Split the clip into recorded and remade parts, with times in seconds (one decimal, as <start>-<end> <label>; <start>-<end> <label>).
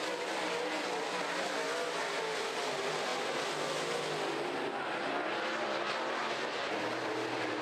0.0-7.6 recorded